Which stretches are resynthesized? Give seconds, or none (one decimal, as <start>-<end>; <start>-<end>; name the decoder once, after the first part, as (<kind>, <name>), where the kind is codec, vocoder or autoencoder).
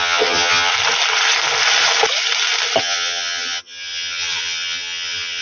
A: 0.0-0.7 (vocoder, HiFi-GAN); 2.8-5.4